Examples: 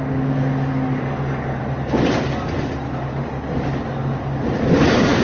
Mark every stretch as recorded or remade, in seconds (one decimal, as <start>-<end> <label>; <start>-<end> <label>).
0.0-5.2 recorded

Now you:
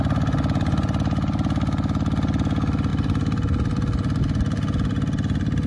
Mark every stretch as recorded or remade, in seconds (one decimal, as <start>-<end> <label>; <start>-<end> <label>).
0.0-5.7 recorded

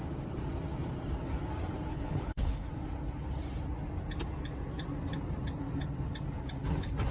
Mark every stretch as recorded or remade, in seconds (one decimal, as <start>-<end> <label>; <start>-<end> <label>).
0.0-1.9 recorded; 1.9-2.7 remade; 2.7-7.1 recorded

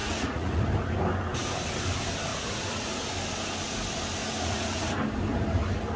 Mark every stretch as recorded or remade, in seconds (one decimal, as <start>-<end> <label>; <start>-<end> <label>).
0.0-0.6 remade; 0.6-2.3 recorded; 2.3-2.9 remade; 2.9-4.2 recorded; 4.2-4.9 remade; 4.9-6.0 recorded

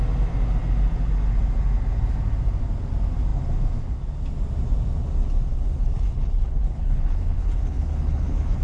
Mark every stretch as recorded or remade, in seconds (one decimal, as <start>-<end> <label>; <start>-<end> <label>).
0.0-5.5 recorded; 5.5-8.6 remade